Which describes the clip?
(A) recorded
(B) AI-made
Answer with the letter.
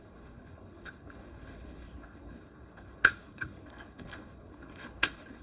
B